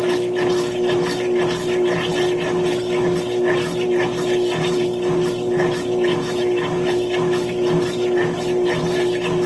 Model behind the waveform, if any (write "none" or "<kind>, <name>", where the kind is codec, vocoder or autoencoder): none